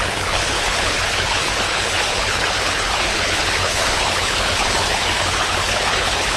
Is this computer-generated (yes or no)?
yes